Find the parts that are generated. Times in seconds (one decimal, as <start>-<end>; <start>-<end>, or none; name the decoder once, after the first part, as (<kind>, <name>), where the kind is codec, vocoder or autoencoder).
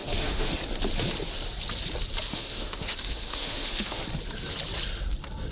0.0-0.6 (autoencoder, DAC-VAE); 2.3-4.0